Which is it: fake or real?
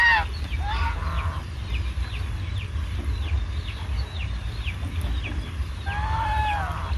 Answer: real